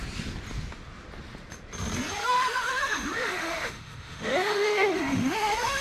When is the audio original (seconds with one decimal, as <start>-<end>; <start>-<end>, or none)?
0.0-2.2